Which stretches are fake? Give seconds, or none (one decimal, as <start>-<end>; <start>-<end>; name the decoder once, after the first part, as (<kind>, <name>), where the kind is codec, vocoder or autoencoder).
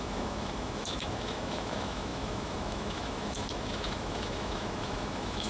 0.0-5.5 (autoencoder, DAC-VAE)